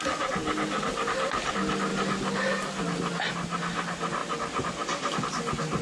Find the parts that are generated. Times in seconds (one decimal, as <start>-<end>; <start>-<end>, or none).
none